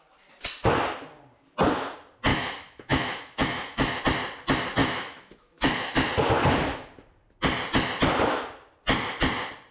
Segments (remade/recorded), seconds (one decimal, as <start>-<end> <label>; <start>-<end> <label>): 0.0-2.3 recorded; 2.3-4.0 remade; 4.0-4.8 recorded; 4.8-6.1 remade; 6.1-9.7 recorded